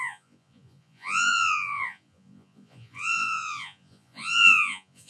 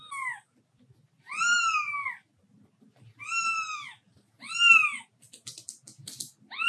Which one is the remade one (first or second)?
first